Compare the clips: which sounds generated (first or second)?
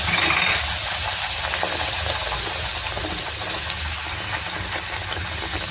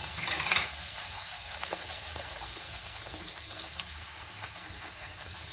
second